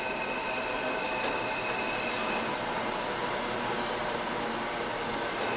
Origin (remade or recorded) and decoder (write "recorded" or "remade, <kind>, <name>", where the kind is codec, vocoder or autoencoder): recorded